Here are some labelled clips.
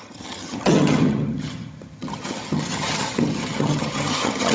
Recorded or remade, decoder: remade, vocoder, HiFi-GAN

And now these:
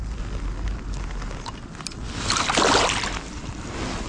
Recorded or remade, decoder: recorded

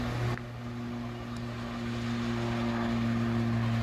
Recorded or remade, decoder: recorded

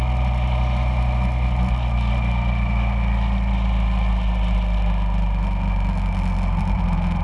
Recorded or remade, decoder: recorded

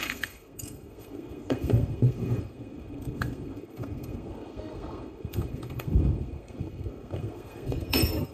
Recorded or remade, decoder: remade, codec, SNAC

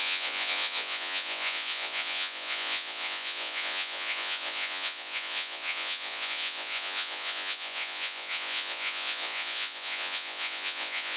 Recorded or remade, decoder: remade, vocoder, Vocos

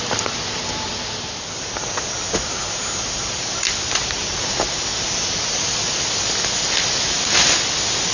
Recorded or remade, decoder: recorded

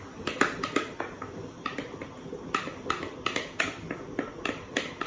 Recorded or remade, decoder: recorded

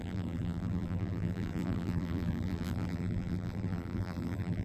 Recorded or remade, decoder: remade, vocoder, BigVGAN v2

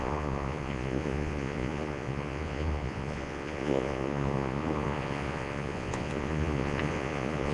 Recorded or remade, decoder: remade, vocoder, Vocos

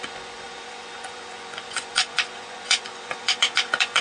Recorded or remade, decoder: remade, vocoder, Vocos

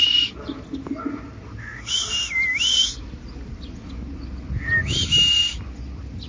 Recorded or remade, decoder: recorded